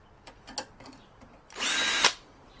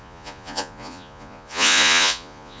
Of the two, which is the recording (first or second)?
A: first